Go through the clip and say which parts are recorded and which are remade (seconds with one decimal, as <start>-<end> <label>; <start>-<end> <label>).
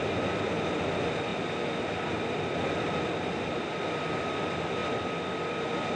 0.0-6.0 recorded